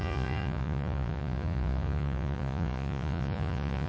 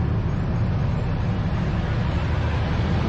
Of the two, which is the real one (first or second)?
second